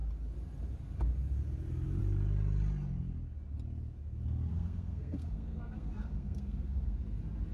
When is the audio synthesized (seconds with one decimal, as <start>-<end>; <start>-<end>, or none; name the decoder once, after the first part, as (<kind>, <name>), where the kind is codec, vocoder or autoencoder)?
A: 4.5-7.0 (codec, SNAC)